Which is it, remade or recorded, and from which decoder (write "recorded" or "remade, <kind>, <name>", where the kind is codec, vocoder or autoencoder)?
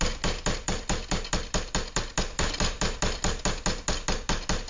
recorded